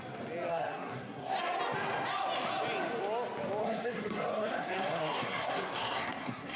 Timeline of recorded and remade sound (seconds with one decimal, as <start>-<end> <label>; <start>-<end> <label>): 0.0-0.5 recorded; 0.5-1.3 remade; 1.3-3.6 recorded; 3.6-6.6 remade